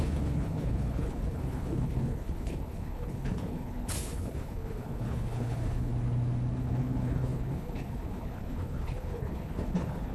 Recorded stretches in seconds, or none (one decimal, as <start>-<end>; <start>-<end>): 5.9-6.6